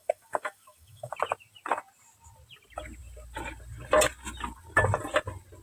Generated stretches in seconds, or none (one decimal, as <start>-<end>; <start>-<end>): 0.0-1.1